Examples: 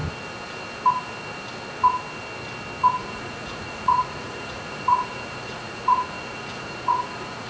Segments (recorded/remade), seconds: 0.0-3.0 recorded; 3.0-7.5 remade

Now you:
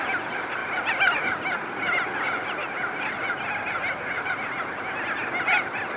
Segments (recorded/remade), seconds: 0.0-6.0 recorded

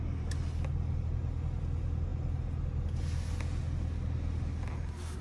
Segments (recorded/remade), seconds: 0.0-5.2 recorded

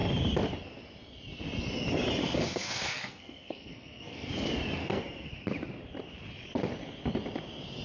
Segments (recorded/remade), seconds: 0.0-2.2 recorded; 2.2-4.3 remade; 4.3-4.8 recorded; 4.8-5.3 remade; 5.3-7.8 recorded

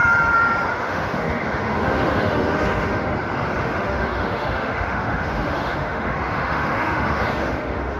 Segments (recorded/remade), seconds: 0.0-0.7 recorded; 0.7-3.1 remade; 3.1-3.6 recorded; 3.6-8.0 remade

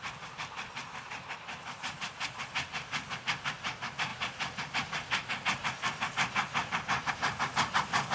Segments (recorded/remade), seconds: 0.0-8.1 recorded

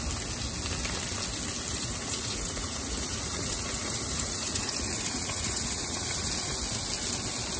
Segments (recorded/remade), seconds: 0.0-1.7 recorded; 1.7-6.3 remade; 6.3-7.6 recorded

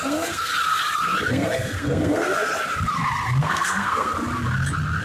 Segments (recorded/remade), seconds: 0.0-0.5 remade; 0.5-1.3 recorded; 1.3-2.5 remade; 2.5-3.4 recorded; 3.4-4.1 remade; 4.1-5.0 recorded